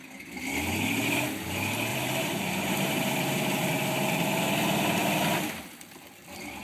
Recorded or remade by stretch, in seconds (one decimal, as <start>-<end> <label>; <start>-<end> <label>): 0.0-1.9 recorded; 1.9-3.1 remade; 3.1-6.6 recorded